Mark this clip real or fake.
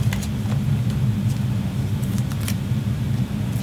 real